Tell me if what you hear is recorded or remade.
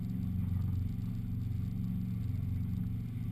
recorded